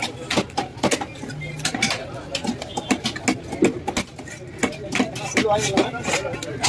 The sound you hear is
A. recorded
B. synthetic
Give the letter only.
A